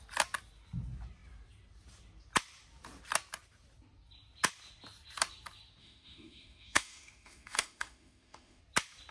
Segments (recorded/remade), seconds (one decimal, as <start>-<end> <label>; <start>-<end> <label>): 0.0-5.8 recorded; 5.8-8.6 remade; 8.6-9.1 recorded